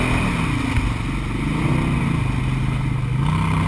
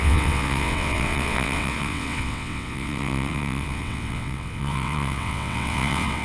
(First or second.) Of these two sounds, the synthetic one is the second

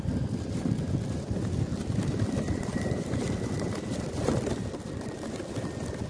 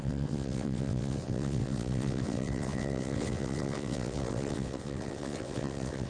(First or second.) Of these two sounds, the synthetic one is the second